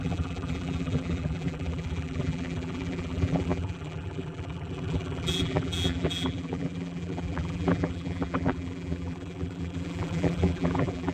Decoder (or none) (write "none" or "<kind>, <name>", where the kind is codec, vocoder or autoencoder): vocoder, BigVGAN v2